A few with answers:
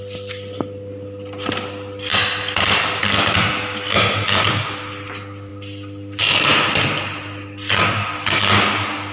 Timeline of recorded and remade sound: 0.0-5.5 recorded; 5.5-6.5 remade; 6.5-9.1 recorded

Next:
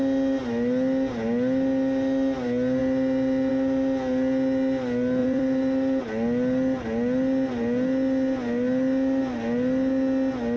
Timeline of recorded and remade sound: 0.0-5.2 recorded; 5.2-6.0 remade; 6.0-10.6 recorded

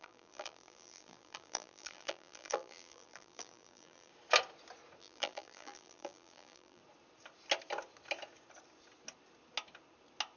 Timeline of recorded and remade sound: 0.0-4.1 remade; 4.1-5.0 recorded; 5.0-6.8 remade; 6.8-10.4 recorded

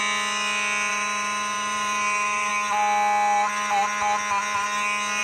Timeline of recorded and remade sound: 0.0-0.9 recorded; 0.9-2.5 remade; 2.5-5.2 recorded

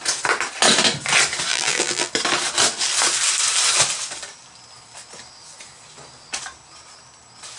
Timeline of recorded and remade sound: 0.0-1.5 recorded; 1.5-2.1 remade; 2.1-7.6 recorded

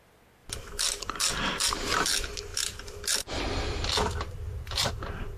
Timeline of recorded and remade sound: 0.0-2.5 recorded; 2.5-4.9 remade; 4.9-5.4 recorded